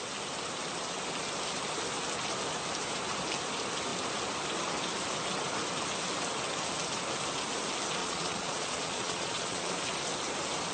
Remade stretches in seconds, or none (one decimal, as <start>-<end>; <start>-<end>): 8.0-9.7